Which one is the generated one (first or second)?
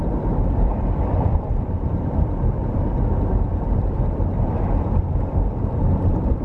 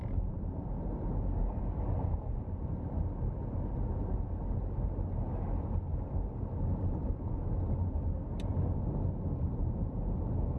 first